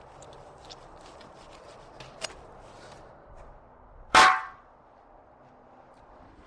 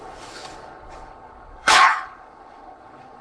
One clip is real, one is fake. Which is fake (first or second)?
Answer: second